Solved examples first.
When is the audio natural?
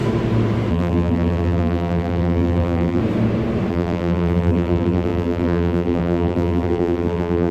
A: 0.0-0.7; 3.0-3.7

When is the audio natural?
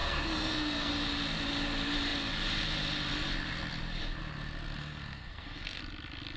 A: 0.9-4.8; 5.8-6.4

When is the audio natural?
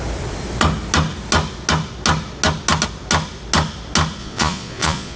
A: 0.0-4.2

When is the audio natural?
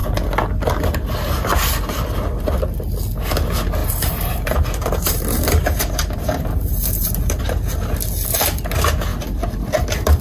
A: 0.0-3.8; 7.4-10.2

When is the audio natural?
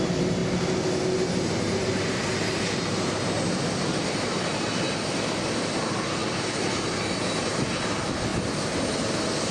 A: 0.0-9.5